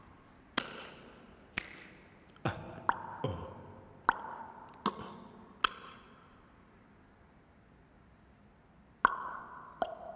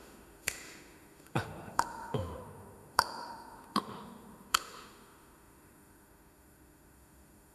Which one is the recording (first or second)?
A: first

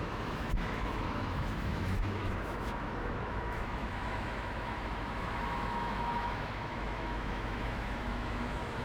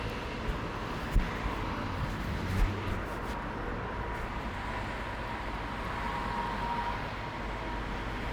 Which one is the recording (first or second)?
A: second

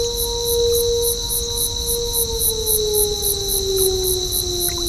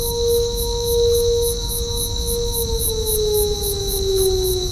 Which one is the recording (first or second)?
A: first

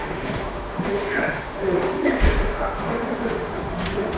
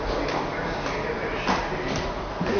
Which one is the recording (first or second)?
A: second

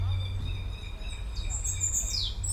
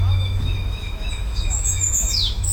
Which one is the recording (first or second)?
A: first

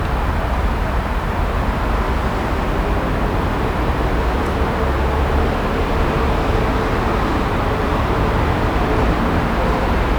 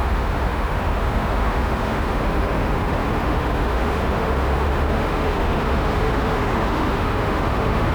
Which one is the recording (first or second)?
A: first